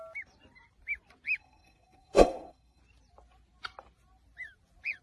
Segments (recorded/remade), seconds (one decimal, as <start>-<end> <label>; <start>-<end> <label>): 0.0-1.4 recorded; 1.4-2.8 remade; 2.8-5.0 recorded